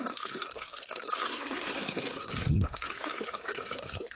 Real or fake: fake